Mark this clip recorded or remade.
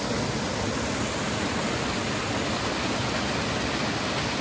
recorded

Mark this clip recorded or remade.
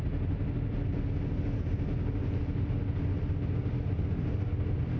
recorded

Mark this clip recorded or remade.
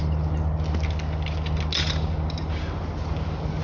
recorded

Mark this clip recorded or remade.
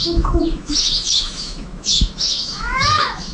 remade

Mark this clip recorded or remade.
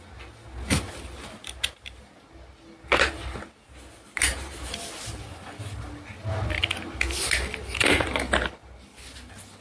recorded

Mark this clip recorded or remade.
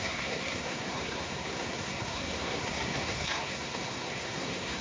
remade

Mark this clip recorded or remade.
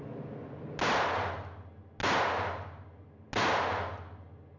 recorded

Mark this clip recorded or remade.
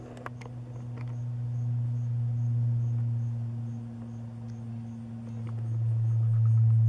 recorded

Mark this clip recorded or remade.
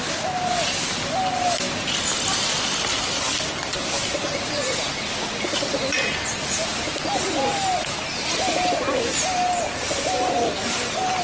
recorded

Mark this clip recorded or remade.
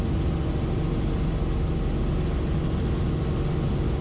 recorded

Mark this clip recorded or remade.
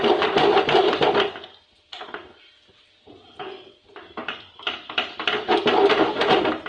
remade